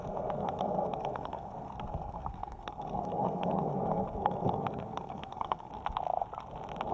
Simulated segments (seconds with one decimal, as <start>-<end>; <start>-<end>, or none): 0.0-5.7